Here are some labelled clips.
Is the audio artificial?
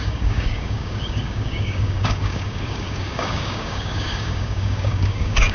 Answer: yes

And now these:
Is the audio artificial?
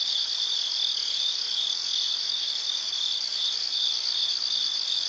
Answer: yes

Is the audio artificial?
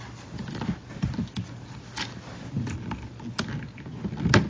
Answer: no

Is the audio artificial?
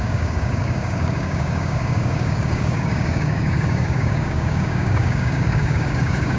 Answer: yes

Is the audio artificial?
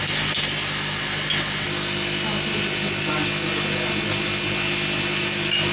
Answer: no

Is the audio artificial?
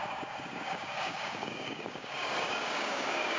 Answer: yes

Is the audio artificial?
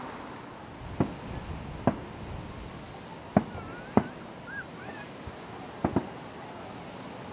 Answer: no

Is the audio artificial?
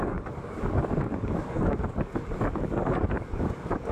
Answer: yes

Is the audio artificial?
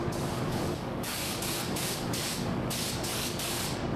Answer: yes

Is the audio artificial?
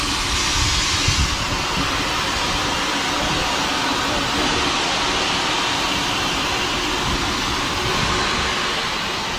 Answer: no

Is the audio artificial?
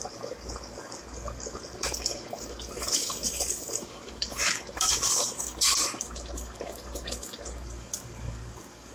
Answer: yes